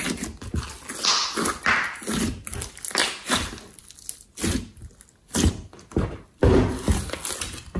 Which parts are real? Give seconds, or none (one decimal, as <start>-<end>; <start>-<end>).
0.0-7.8